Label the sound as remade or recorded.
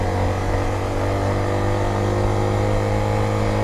recorded